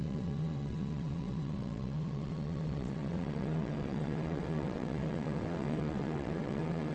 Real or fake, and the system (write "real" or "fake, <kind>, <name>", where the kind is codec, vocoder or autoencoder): fake, vocoder, WaveNeXt